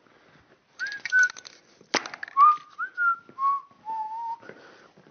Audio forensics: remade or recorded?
recorded